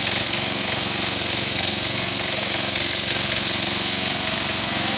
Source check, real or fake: fake